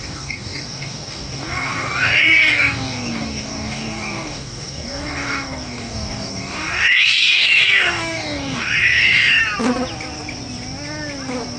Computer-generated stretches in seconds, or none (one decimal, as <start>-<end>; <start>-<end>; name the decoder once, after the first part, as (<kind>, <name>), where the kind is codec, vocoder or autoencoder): 0.0-9.4 (codec, DAC)